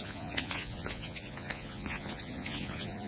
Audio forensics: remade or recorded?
remade